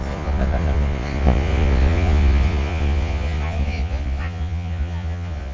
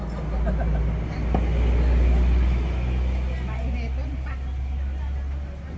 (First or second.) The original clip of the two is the second